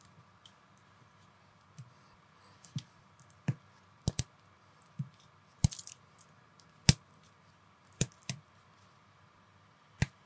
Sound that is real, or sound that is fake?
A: real